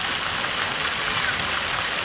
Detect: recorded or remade recorded